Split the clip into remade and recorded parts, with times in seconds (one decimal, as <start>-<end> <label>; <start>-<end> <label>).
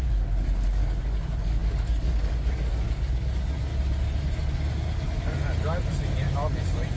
0.0-3.7 remade; 3.7-4.7 recorded; 4.7-5.4 remade; 5.4-7.0 recorded